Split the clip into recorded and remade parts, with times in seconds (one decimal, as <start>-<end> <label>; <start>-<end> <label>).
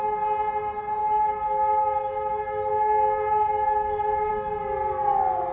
0.0-1.0 recorded; 1.0-4.3 remade; 4.3-5.5 recorded